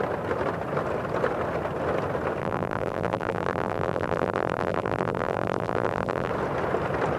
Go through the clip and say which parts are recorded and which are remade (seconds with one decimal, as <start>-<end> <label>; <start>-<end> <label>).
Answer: 0.0-2.4 recorded; 2.4-6.3 remade; 6.3-7.2 recorded